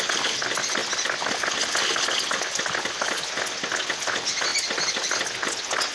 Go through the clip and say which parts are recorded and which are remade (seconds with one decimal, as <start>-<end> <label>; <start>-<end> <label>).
0.0-5.9 recorded